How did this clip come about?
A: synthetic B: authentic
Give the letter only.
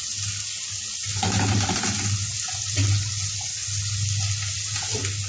B